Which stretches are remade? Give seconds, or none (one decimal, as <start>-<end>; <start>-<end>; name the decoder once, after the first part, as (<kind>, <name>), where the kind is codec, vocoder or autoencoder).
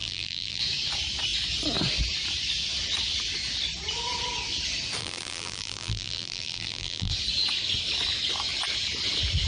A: 0.0-0.6 (vocoder, BigVGAN v2); 5.0-7.1